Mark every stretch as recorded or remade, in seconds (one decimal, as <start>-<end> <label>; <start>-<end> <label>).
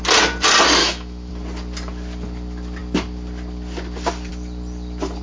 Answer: 0.0-0.8 recorded; 0.8-1.3 remade; 1.3-5.2 recorded